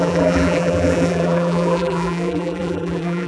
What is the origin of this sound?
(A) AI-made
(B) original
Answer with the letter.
A